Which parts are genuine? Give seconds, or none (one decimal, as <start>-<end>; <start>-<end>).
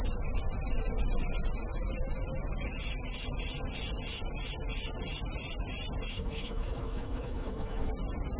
0.0-6.1; 7.9-8.4